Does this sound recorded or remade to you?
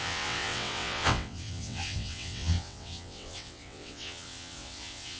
remade